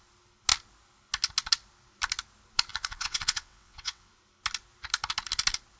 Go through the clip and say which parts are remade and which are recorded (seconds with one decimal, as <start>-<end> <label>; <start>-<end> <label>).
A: 0.0-2.7 recorded; 2.7-4.1 remade; 4.1-5.8 recorded